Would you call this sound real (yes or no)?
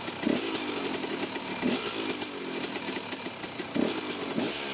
yes